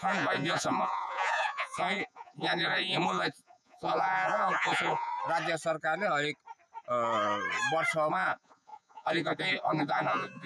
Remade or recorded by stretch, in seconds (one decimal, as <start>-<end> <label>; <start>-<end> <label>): 0.0-5.1 remade; 5.1-8.1 recorded; 8.1-10.5 remade